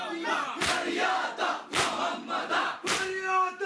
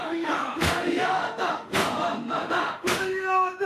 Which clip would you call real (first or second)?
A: first